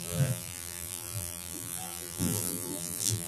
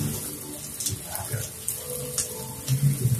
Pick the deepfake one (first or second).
first